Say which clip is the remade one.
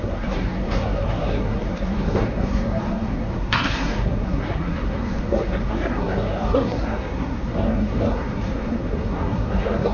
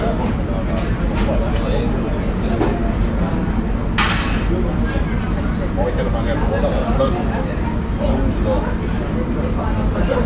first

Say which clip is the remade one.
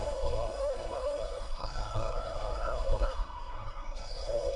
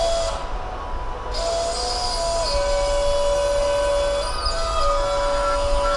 first